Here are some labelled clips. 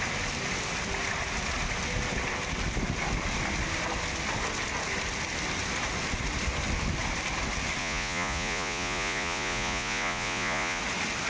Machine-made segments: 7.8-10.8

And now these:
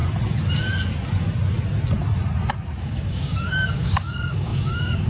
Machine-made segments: 2.8-5.1

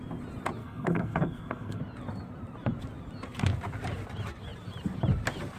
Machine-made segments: 0.6-1.8

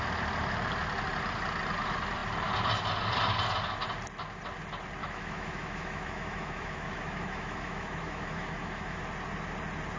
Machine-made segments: 5.0-9.0

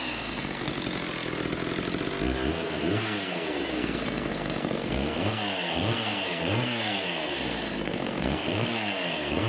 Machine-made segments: 0.0-0.7; 2.5-9.5

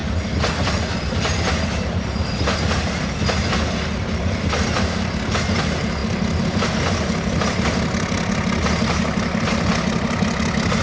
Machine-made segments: none

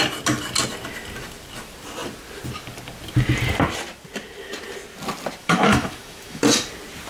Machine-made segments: 5.4-6.4